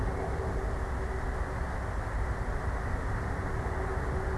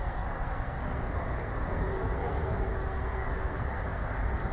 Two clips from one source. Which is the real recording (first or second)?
first